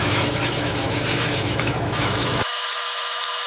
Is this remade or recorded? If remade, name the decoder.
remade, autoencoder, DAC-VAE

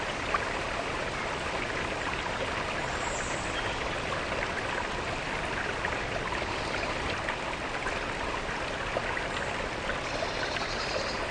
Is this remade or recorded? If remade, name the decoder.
recorded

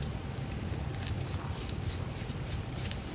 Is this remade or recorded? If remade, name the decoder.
recorded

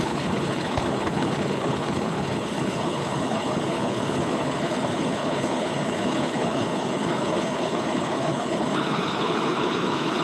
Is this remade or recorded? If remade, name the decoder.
remade, codec, HILCodec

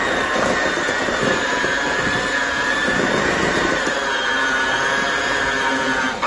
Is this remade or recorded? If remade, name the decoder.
remade, vocoder, BigVGAN v2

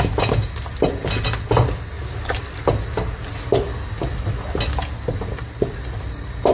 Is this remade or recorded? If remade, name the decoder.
recorded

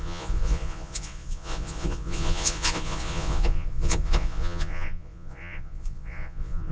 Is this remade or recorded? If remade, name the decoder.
remade, vocoder, Vocos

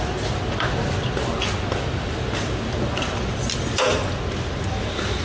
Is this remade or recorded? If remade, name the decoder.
recorded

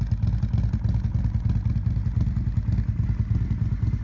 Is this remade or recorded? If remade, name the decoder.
recorded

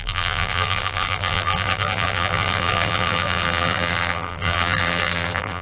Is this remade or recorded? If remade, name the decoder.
remade, vocoder, BigVGAN v2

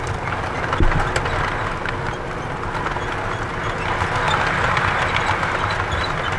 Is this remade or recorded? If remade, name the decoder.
recorded